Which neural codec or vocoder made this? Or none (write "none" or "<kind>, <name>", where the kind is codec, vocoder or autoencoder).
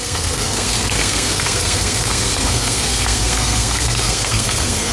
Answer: codec, SNAC